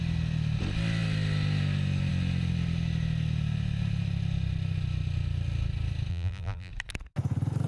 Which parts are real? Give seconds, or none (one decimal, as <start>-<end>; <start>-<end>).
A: 0.0-6.1; 6.7-7.7